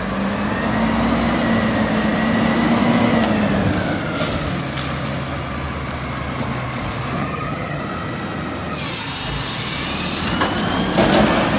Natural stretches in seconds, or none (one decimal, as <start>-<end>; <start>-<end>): 0.0-7.2; 7.8-11.6